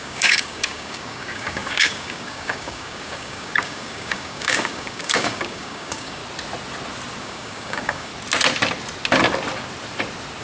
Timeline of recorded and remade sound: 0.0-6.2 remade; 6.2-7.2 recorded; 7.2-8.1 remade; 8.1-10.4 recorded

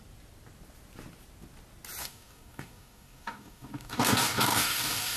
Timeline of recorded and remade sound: 0.0-2.0 recorded; 2.0-5.2 remade